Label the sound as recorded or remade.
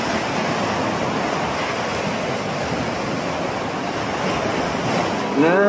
recorded